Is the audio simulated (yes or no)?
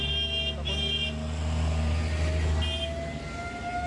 no